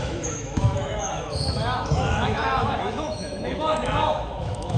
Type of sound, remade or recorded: remade